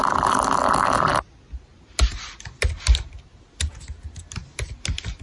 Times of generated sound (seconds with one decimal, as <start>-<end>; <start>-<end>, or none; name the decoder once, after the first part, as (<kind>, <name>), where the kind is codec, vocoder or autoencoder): none